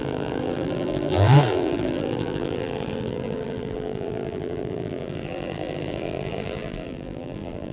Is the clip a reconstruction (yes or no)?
yes